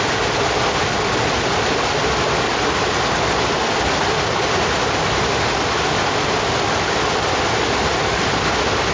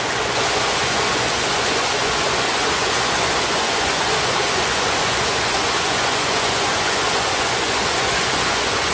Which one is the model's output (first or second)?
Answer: second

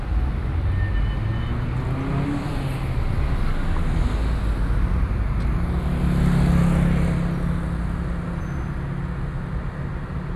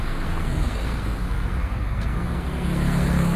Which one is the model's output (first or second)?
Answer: second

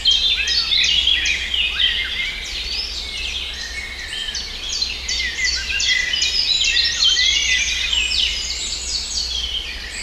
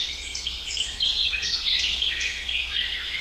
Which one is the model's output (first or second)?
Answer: second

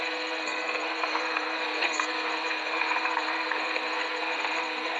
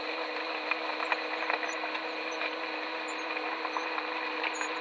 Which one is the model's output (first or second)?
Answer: first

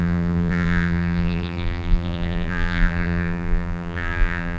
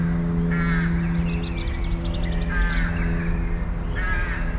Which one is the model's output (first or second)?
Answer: first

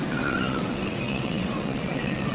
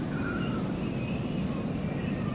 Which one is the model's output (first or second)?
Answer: first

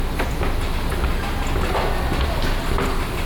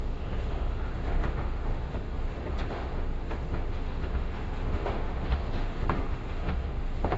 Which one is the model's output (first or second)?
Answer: second